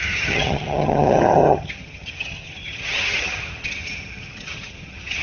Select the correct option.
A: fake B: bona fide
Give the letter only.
A